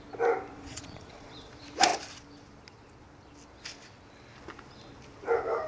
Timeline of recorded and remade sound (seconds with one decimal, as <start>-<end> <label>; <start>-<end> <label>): 0.0-0.5 recorded; 0.5-1.5 remade; 1.5-5.7 recorded